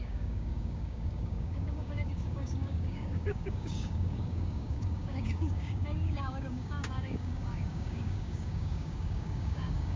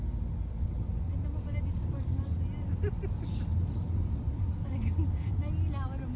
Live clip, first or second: second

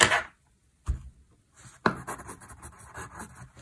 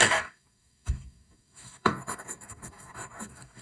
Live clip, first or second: first